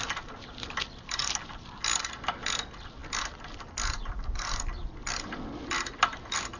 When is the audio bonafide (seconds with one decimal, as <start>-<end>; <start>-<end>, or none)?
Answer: 0.0-6.6